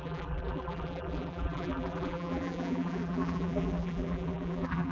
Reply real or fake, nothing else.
fake